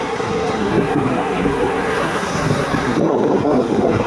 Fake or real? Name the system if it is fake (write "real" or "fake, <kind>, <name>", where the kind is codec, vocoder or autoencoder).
fake, codec, SNAC